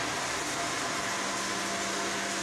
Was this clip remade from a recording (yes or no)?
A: no